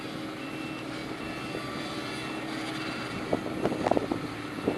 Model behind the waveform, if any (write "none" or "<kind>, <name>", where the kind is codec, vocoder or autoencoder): none